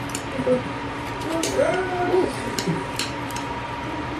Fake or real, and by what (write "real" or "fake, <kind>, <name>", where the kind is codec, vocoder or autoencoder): fake, vocoder, BigVGAN v2